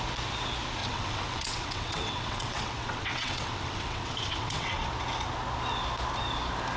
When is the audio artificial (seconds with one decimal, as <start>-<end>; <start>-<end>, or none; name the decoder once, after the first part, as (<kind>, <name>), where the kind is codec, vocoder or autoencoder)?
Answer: 0.8-4.9 (vocoder, WaveNeXt)